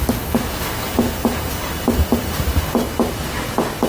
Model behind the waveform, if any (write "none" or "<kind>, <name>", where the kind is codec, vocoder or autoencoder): none